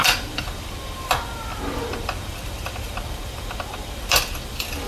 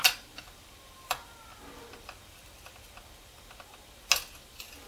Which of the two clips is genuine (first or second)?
second